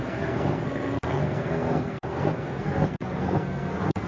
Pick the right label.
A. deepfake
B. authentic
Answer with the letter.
A